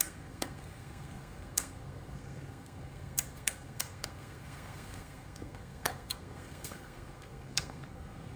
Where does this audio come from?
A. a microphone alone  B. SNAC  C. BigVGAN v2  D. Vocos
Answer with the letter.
B